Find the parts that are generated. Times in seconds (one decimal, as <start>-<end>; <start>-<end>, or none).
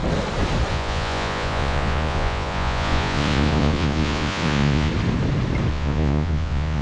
0.7-4.9; 5.7-6.8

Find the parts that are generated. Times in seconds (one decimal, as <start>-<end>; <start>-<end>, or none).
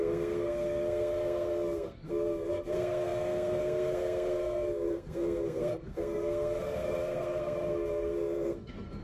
0.0-9.0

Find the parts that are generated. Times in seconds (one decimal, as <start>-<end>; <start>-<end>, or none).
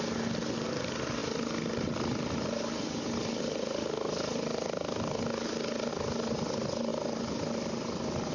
none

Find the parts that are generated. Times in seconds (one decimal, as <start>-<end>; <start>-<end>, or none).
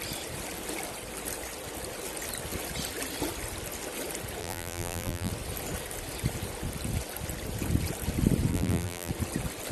4.4-5.3; 8.5-9.1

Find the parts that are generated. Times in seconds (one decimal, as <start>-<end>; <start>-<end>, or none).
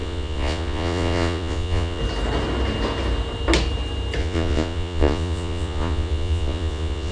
0.0-2.0; 4.2-7.1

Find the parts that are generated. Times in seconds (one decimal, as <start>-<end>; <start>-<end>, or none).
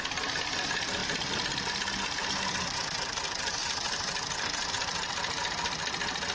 none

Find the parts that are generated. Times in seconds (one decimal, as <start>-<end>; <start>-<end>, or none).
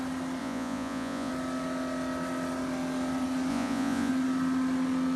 0.4-1.3; 3.5-4.1